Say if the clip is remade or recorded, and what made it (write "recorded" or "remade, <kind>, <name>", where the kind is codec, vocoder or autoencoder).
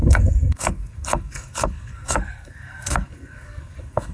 remade, codec, SNAC